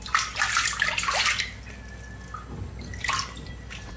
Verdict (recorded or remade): recorded